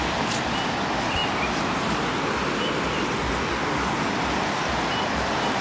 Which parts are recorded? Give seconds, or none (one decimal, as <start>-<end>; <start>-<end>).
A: 0.0-5.6